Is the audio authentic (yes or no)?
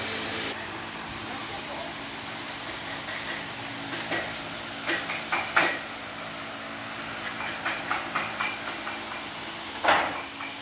yes